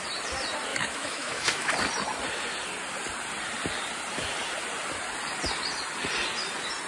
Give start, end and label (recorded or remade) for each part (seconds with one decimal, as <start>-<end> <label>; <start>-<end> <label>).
0.0-0.7 recorded; 0.7-1.7 remade; 1.7-6.9 recorded